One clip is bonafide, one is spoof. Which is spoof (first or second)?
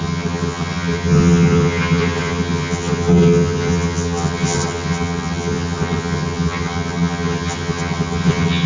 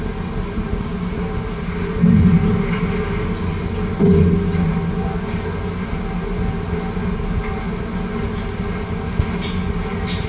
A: first